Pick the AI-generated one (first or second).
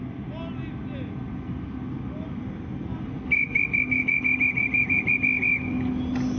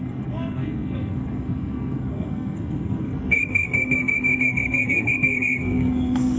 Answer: second